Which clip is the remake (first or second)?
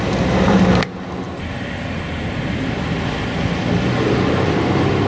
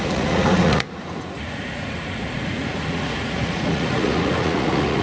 second